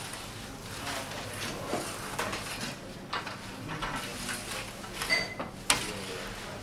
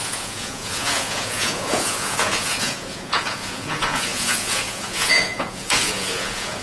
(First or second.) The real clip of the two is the first